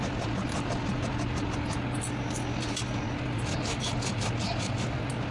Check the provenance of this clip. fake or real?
real